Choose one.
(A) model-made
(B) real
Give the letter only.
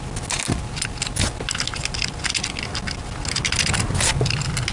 B